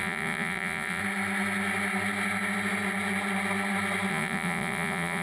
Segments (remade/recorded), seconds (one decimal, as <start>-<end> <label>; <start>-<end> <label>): 0.0-1.0 remade; 1.0-4.1 recorded; 4.1-5.2 remade